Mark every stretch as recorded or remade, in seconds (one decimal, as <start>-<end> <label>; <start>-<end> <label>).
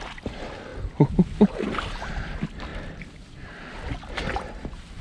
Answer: 0.0-5.0 recorded